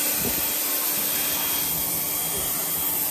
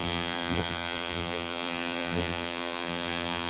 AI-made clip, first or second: second